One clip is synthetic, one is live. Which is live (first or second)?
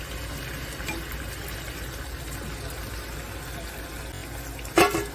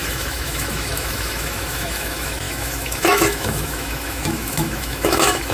first